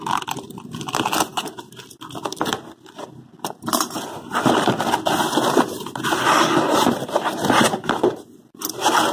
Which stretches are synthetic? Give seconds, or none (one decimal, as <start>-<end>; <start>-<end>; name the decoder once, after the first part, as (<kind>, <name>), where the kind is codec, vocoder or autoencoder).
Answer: none